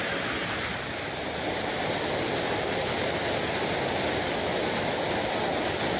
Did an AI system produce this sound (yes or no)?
no